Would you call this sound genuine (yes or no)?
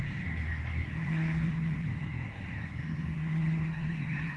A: no